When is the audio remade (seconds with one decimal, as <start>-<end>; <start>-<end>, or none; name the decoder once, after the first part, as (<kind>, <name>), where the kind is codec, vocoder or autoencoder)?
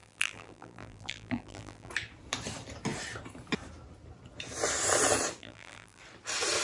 0.0-1.9 (vocoder, BigVGAN v2); 5.4-6.0